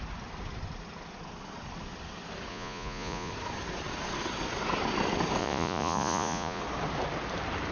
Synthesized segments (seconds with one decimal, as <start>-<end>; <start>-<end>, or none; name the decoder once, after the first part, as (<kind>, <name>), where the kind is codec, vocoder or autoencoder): 2.5-3.3 (vocoder, Vocos); 5.4-6.6

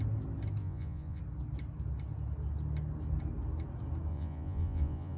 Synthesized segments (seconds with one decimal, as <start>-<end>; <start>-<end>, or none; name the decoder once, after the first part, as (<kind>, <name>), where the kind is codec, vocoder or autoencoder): 0.6-1.2 (vocoder, Vocos); 4.1-5.2

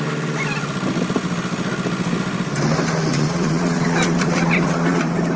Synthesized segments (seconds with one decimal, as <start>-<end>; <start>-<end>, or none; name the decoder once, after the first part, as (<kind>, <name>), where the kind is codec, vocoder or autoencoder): 3.1-5.0 (vocoder, Vocos)

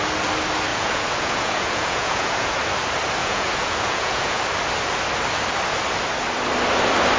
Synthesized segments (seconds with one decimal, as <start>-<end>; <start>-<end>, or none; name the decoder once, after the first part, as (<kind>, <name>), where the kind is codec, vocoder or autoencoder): 0.7-2.6 (vocoder, Vocos); 3.2-4.4

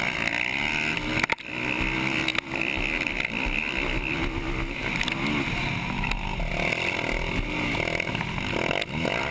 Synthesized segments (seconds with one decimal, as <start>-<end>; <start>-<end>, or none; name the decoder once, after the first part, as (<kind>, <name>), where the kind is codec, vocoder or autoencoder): none